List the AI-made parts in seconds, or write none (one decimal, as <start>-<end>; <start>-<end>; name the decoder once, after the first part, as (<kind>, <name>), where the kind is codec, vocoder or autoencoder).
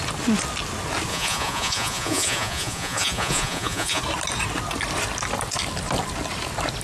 1.1-4.0 (vocoder, Vocos)